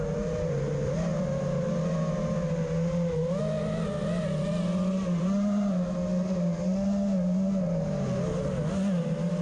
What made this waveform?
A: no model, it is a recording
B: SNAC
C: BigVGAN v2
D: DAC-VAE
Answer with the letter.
A